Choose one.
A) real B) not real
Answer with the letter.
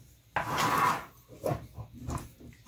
A